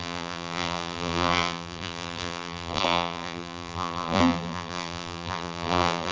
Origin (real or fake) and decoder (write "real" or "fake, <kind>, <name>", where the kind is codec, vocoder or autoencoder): fake, vocoder, BigVGAN v2